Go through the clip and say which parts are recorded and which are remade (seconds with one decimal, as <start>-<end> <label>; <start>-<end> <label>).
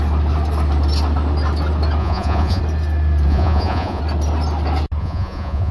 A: 0.0-2.0 recorded; 2.0-2.6 remade; 2.6-3.3 recorded; 3.3-4.0 remade; 4.0-5.0 recorded; 5.0-5.7 remade